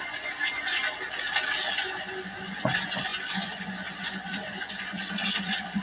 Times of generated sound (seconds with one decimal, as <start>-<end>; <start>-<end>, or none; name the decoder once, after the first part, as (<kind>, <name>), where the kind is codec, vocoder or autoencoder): 0.0-0.8 (vocoder, Vocos); 1.7-5.8